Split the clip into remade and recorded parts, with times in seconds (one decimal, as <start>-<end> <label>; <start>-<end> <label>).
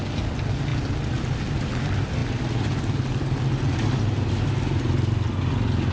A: 0.0-5.9 recorded